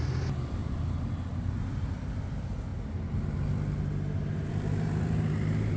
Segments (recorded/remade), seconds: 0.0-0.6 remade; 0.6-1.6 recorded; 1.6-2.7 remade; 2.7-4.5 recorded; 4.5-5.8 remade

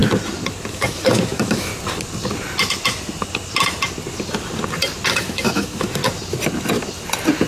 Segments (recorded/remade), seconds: 0.0-0.7 recorded; 0.7-1.7 remade; 1.7-5.1 recorded; 5.1-6.0 remade; 6.0-7.5 recorded

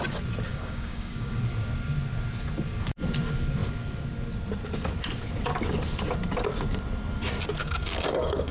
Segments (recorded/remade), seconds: 0.0-0.5 recorded; 0.5-1.4 remade; 1.4-7.6 recorded; 7.6-8.5 remade

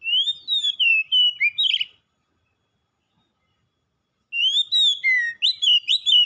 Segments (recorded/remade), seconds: 0.0-6.3 recorded

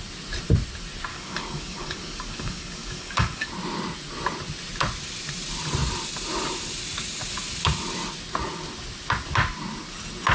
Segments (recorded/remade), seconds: 0.0-1.1 recorded; 1.1-3.5 remade; 3.5-10.3 recorded

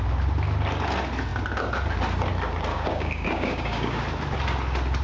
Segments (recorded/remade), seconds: 0.0-2.7 recorded; 2.7-4.0 remade; 4.0-5.0 recorded

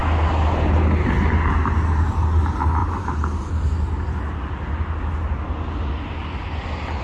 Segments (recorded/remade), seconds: 0.0-2.8 recorded; 2.8-3.5 remade; 3.5-7.0 recorded

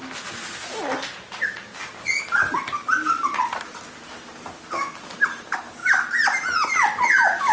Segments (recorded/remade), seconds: 0.0-7.5 recorded